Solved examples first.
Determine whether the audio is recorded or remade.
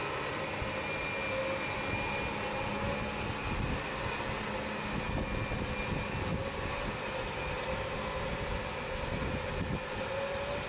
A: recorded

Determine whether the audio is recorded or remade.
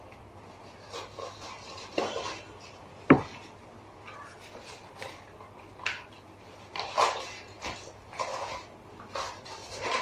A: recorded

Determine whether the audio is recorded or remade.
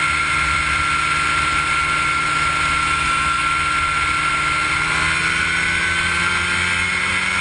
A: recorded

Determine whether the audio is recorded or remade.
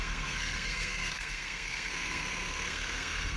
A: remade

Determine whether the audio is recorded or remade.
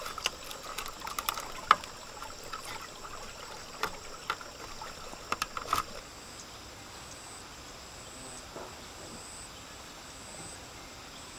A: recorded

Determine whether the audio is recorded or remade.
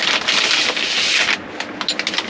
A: recorded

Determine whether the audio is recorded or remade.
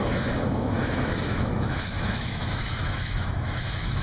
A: remade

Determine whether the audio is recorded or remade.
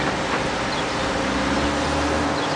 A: recorded